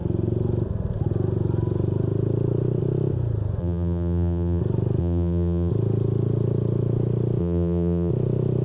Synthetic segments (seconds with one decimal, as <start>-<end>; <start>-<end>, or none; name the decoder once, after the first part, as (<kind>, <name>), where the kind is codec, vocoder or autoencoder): 3.6-4.6 (vocoder, BigVGAN v2); 5.0-5.7; 7.4-8.1